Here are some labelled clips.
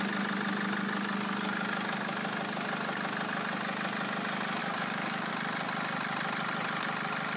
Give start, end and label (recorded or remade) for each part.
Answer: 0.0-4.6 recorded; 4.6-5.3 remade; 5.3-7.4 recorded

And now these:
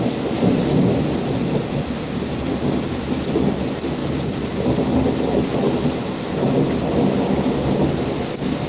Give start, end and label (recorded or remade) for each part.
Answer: 0.0-8.7 recorded

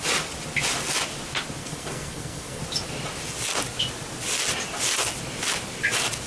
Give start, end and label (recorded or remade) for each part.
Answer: 0.0-1.6 recorded; 1.6-2.6 remade; 2.6-6.3 recorded

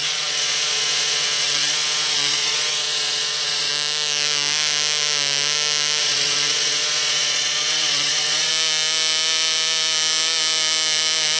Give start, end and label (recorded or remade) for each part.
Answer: 0.0-3.7 remade; 3.7-6.0 recorded; 6.0-8.5 remade; 8.5-11.4 recorded

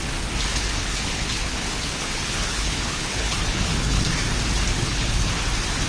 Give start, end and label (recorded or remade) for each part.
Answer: 0.0-0.5 recorded; 0.5-4.0 remade; 4.0-4.7 recorded; 4.7-5.3 remade; 5.3-5.9 recorded

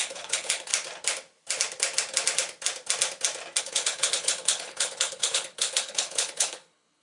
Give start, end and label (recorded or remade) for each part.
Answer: 0.0-0.7 remade; 0.7-3.6 recorded; 3.6-7.0 remade